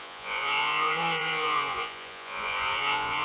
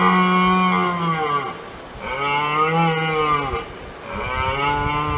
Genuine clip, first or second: second